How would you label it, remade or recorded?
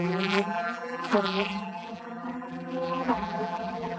remade